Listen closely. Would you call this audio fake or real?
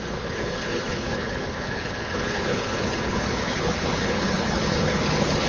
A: fake